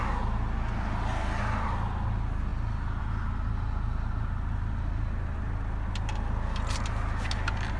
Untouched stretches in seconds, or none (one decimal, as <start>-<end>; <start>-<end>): 0.0-7.8